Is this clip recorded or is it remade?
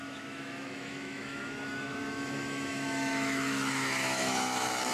remade